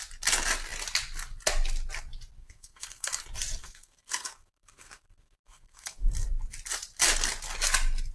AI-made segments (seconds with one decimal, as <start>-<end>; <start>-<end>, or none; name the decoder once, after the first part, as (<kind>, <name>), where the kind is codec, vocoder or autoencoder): 2.4-3.2 (codec, SNAC); 3.6-6.1